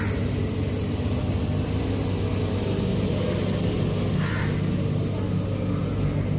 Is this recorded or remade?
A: recorded